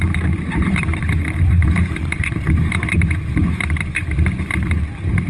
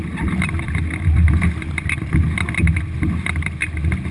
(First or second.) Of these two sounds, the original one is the second